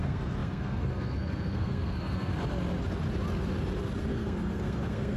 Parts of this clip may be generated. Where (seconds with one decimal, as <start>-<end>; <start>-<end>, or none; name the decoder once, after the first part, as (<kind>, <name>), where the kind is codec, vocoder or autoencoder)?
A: 0.0-2.3 (codec, SNAC); 4.0-5.2